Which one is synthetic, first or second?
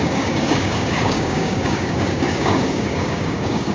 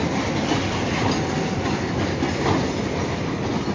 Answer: first